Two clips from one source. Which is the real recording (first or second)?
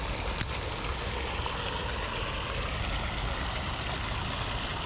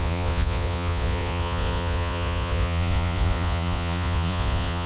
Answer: first